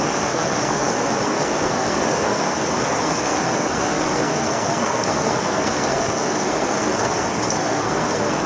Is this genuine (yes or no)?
no